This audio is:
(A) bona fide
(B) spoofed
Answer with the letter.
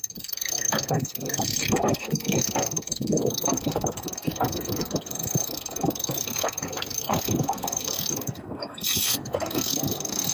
B